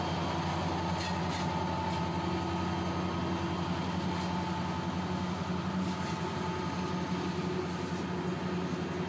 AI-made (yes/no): no